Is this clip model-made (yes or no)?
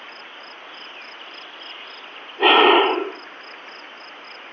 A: no